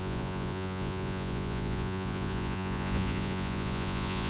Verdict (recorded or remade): remade